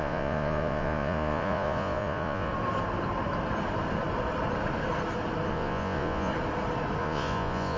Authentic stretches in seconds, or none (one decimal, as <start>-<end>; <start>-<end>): 2.5-5.5; 6.3-7.0